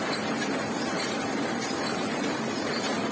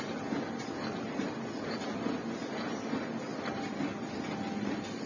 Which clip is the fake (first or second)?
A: first